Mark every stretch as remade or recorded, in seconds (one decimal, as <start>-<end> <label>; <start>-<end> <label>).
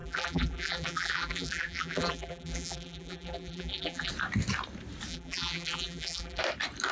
0.0-4.1 remade; 4.1-5.1 recorded; 5.1-6.4 remade; 6.4-6.9 recorded